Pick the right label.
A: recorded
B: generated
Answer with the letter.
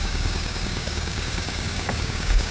B